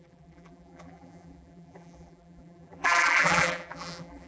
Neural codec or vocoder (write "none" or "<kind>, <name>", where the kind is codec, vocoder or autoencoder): vocoder, BigVGAN v2